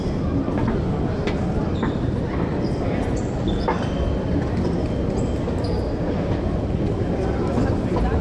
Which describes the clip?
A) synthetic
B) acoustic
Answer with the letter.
B